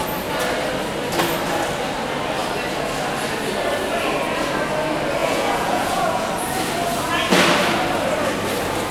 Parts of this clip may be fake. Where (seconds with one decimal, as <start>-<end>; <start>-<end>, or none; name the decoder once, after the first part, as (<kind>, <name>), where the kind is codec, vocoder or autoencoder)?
5.2-6.3 (vocoder, Vocos)

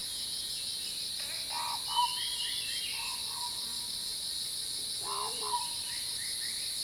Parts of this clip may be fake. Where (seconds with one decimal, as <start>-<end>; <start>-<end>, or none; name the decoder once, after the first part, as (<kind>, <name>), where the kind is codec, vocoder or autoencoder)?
0.0-0.7 (vocoder, Vocos)

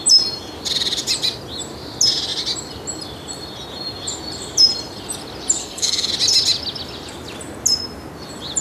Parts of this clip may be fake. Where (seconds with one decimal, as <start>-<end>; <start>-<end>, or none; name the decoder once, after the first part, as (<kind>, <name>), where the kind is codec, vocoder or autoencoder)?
5.6-6.1 (codec, SNAC)